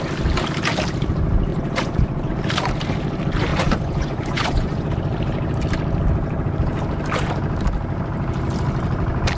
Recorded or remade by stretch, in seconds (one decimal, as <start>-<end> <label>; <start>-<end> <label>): 0.0-1.5 recorded; 1.5-2.3 remade; 2.3-3.5 recorded; 3.5-4.9 remade; 4.9-9.4 recorded